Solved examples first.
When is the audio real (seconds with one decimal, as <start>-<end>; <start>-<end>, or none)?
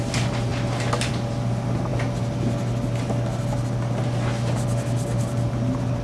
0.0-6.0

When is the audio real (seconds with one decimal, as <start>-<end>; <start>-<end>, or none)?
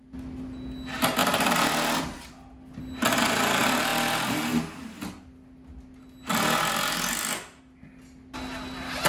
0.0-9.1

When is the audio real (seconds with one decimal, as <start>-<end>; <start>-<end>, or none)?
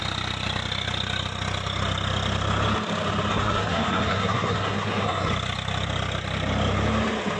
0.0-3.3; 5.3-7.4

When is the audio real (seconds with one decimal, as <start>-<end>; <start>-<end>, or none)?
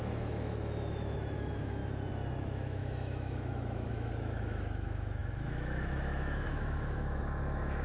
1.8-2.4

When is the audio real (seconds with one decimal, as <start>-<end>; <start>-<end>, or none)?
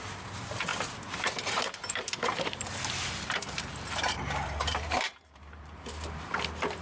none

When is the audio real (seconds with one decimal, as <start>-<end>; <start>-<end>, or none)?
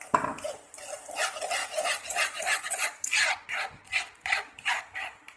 0.0-1.6; 4.8-5.4